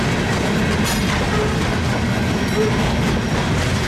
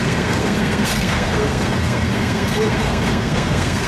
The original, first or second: first